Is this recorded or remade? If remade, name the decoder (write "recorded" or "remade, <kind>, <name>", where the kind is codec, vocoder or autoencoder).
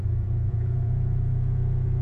remade, vocoder, Vocos